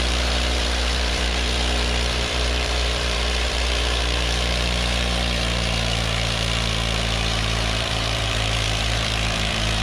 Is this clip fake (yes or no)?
yes